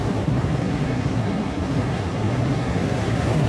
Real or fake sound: fake